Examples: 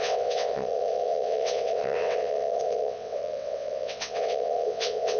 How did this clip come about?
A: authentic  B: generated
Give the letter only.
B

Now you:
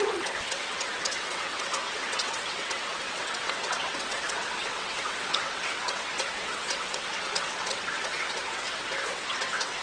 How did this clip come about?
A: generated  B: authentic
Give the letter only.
A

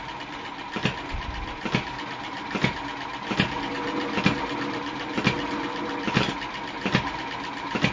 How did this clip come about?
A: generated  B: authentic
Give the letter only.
B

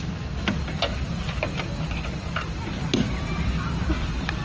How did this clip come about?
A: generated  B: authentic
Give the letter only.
B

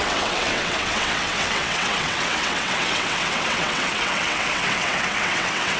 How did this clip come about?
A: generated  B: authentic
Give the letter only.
A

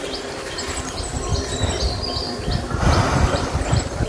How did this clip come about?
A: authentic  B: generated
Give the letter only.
A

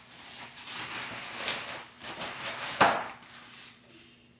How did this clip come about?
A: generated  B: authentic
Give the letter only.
B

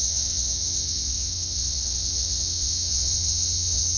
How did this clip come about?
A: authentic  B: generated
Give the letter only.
B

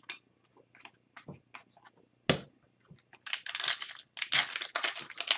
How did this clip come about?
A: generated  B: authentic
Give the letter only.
B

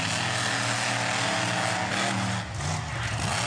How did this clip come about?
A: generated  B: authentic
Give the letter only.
B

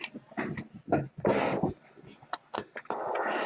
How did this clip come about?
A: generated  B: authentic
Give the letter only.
B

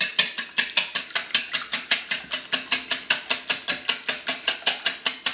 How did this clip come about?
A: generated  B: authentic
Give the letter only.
B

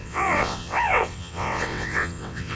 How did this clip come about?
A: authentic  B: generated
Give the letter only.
B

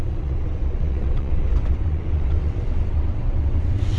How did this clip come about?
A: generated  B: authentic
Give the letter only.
A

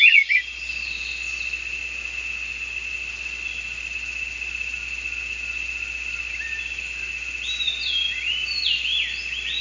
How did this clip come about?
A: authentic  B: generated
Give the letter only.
A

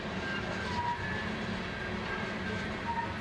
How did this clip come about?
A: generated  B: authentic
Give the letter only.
B